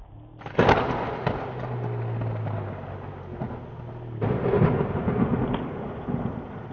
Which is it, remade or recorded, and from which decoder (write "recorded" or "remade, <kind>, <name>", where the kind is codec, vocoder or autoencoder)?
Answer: recorded